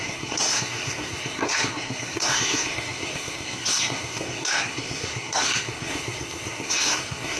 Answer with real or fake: fake